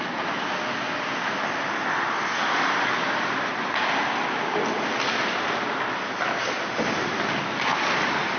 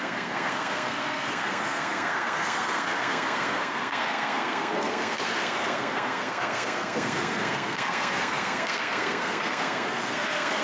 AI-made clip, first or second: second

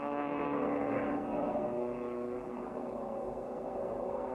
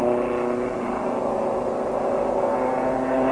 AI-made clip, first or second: first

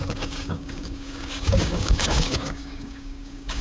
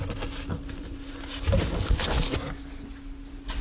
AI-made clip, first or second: first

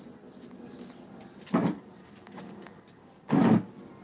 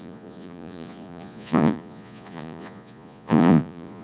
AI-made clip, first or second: second